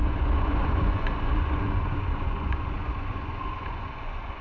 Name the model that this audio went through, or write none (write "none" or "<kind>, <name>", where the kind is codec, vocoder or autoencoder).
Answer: vocoder, Vocos